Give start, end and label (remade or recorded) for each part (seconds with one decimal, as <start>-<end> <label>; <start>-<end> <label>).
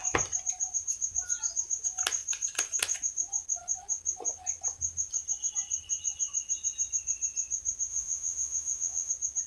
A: 0.0-7.9 recorded; 7.9-9.1 remade; 9.1-9.5 recorded